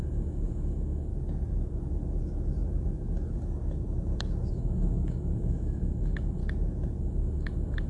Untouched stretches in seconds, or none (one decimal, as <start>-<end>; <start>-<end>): 1.1-4.5; 6.4-7.0